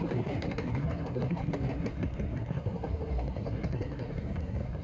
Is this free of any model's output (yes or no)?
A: no